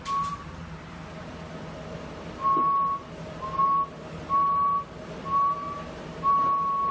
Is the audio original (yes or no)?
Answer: yes